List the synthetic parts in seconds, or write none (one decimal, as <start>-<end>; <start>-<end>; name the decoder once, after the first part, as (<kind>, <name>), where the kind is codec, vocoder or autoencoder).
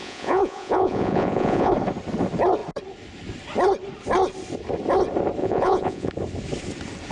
0.0-1.7 (vocoder, Vocos); 5.4-6.1